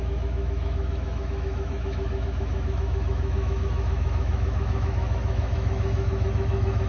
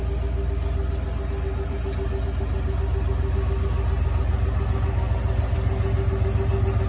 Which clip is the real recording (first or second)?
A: second